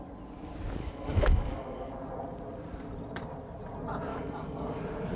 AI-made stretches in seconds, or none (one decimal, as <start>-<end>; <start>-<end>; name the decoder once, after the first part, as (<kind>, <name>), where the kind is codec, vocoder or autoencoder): 0.8-1.9 (codec, DAC); 4.1-4.8